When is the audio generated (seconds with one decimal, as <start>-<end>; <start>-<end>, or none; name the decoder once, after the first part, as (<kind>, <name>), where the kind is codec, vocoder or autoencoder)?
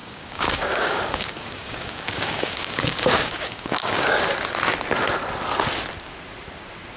0.0-4.2 (codec, DAC)